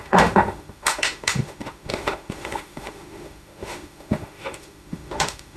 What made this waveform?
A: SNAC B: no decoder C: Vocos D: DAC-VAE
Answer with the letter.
D